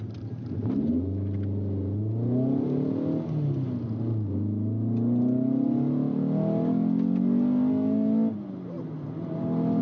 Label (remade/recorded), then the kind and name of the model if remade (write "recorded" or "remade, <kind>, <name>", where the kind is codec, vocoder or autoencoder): recorded